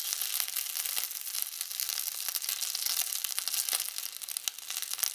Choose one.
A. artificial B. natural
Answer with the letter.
B